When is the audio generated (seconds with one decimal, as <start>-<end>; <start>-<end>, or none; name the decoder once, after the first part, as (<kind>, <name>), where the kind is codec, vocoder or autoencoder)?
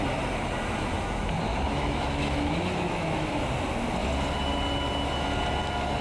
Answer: 1.5-3.4 (autoencoder, DAC-VAE)